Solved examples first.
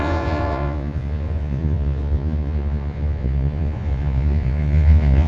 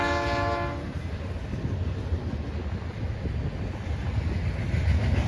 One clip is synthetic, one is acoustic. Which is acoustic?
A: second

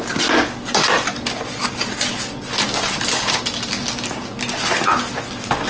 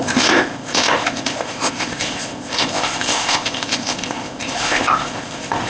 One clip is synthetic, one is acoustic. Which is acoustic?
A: first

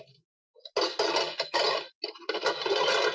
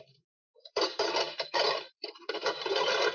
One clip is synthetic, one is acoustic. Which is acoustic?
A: first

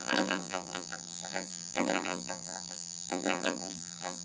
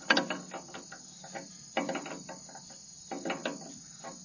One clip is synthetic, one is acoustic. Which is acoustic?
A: second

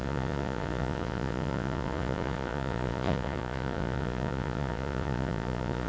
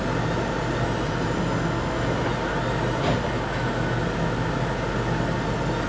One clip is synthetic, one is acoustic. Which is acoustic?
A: second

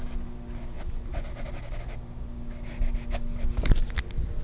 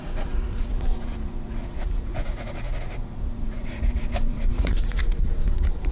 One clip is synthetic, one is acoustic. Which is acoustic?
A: first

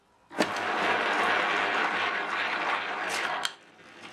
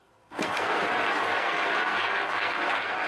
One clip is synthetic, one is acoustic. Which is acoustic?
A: first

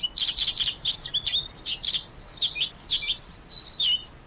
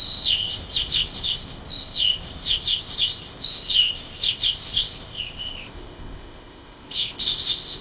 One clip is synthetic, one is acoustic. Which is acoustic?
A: first